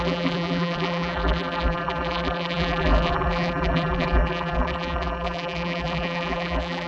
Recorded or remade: remade